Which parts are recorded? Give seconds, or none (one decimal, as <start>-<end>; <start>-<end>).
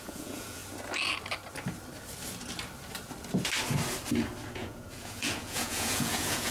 0.6-4.5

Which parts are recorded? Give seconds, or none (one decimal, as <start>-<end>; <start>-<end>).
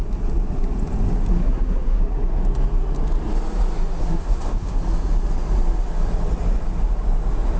0.0-1.3; 2.0-4.0; 4.8-7.6